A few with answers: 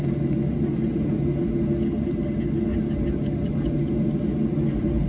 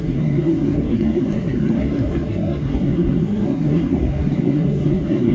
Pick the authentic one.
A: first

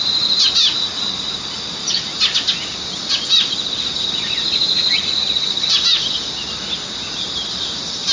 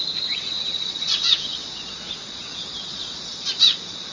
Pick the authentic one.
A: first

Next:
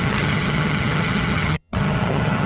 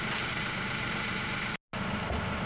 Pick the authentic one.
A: second